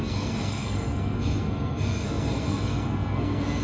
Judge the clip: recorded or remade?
remade